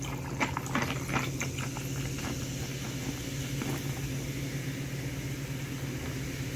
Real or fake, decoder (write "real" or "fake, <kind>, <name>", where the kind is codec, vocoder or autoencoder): real